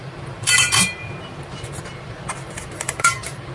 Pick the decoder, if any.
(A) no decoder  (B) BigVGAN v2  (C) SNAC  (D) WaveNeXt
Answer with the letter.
B